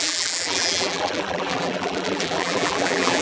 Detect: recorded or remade remade